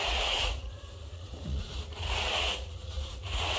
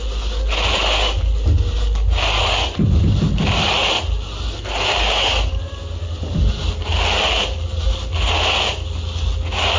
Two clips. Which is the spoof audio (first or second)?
first